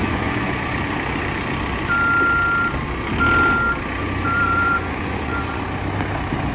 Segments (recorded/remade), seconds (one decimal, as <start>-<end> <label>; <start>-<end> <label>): 0.0-0.7 remade; 0.7-4.0 recorded; 4.0-5.6 remade; 5.6-6.5 recorded